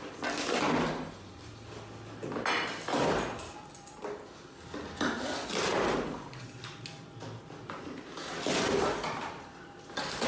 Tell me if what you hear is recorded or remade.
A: recorded